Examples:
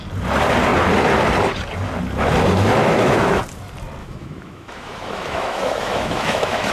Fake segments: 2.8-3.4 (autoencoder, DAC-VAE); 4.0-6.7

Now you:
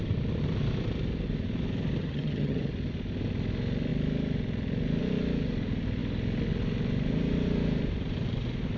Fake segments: 2.0-2.6 (vocoder, HiFi-GAN)

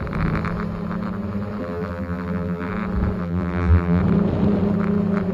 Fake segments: 1.6-2.7 (vocoder, BigVGAN v2); 3.2-4.0